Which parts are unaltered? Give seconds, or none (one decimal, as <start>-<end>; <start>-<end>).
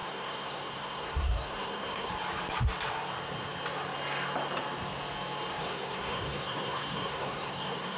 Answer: 2.1-5.5